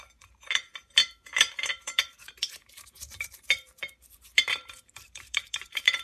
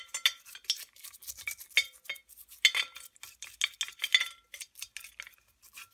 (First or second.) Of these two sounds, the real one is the second